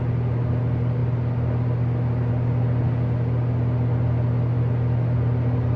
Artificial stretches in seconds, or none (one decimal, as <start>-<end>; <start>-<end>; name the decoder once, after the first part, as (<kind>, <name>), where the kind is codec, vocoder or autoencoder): none